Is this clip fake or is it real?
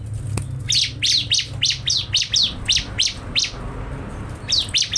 real